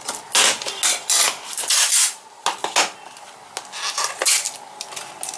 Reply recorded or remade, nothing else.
recorded